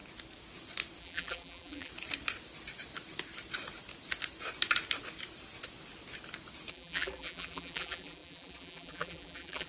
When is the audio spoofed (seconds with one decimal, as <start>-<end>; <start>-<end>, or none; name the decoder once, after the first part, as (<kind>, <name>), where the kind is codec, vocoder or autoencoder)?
1.0-1.9 (vocoder, BigVGAN v2); 6.7-9.7